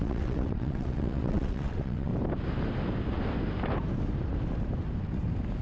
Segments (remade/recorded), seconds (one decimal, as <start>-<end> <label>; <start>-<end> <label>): 0.0-2.1 remade; 2.1-5.6 recorded